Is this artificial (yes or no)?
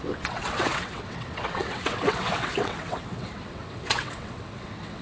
yes